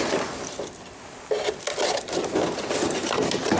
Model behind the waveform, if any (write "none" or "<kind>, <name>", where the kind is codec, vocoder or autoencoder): none